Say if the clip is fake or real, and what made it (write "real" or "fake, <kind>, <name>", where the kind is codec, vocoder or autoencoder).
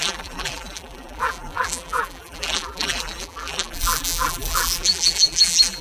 fake, vocoder, BigVGAN v2